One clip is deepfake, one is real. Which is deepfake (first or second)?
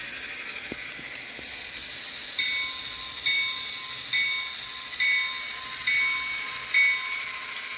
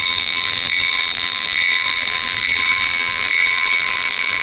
second